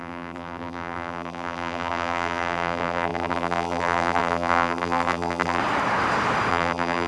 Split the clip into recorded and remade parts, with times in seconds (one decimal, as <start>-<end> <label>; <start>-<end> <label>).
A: 0.0-5.6 remade; 5.6-6.5 recorded; 6.5-7.1 remade